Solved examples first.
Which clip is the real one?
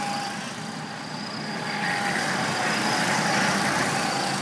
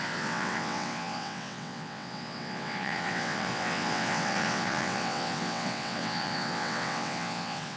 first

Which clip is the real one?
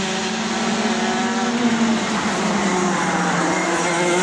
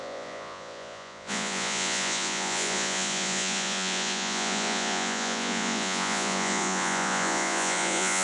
first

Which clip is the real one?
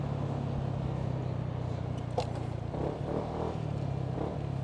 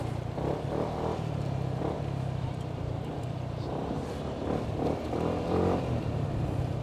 first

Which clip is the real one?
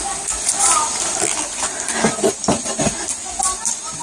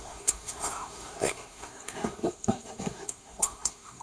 first